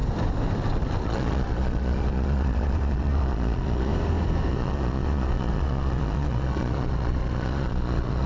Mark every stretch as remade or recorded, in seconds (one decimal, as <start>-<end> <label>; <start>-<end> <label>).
0.0-1.0 recorded; 1.0-3.9 remade; 3.9-4.5 recorded; 4.5-8.3 remade